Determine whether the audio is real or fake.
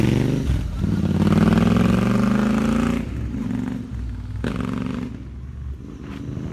real